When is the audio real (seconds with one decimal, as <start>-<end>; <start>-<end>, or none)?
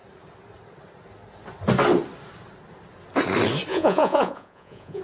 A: 0.0-3.7